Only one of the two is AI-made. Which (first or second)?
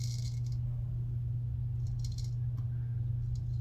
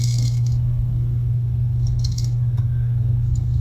second